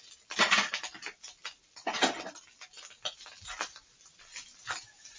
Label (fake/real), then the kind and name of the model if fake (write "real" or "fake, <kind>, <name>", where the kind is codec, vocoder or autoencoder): fake, vocoder, BigVGAN v2